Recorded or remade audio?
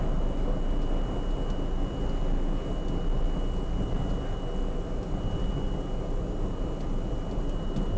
recorded